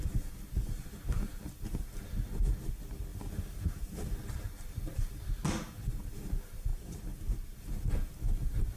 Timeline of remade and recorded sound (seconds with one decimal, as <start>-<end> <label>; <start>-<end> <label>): 0.0-3.1 recorded; 3.1-5.3 remade; 5.3-6.7 recorded; 6.7-7.6 remade; 7.6-8.8 recorded